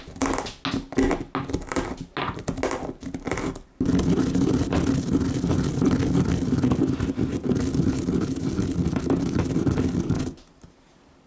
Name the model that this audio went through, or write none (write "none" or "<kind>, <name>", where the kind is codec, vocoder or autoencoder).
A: none